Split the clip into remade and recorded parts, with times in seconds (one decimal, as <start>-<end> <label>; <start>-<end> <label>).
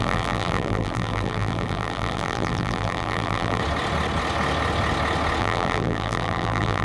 0.0-3.6 remade; 3.6-5.4 recorded; 5.4-6.8 remade